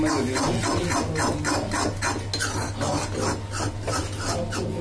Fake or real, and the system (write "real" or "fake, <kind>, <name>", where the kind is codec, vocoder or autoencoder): real